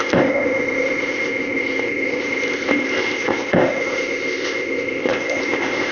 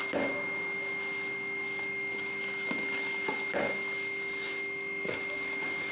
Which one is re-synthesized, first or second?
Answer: first